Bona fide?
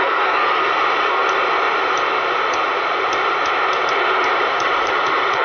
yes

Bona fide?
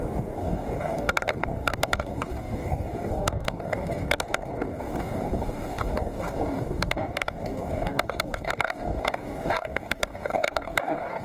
no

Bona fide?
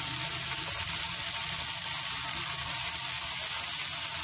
yes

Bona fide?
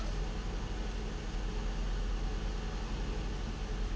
yes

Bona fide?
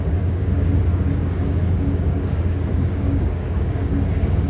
no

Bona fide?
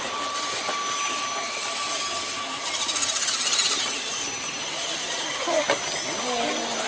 yes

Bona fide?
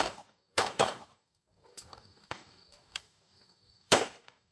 no